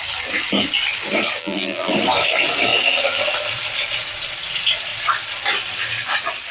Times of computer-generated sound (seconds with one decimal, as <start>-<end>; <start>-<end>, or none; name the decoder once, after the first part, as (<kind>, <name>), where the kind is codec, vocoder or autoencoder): 1.4-1.9 (vocoder, BigVGAN v2)